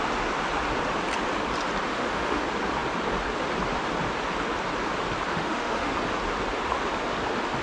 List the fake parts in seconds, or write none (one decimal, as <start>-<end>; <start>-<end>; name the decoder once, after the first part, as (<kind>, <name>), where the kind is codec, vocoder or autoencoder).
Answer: 1.9-2.4 (autoencoder, DAC-VAE); 5.3-5.9